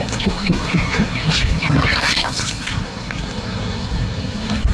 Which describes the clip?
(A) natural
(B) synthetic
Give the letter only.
B